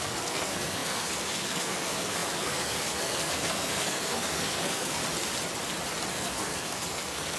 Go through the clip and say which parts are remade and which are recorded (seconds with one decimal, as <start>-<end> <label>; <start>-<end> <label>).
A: 0.0-5.0 remade; 5.0-6.1 recorded; 6.1-7.4 remade